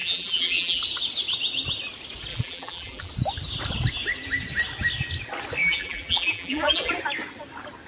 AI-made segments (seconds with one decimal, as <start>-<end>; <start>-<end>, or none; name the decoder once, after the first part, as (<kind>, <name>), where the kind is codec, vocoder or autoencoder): 0.0-0.8 (vocoder, BigVGAN v2); 2.3-3.1; 5.6-6.9